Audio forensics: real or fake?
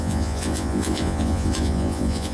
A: fake